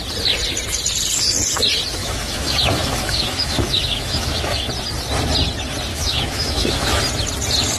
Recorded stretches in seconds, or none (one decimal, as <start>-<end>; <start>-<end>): 0.0-2.0; 4.7-5.9; 7.0-7.8